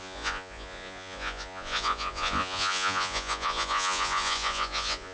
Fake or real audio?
fake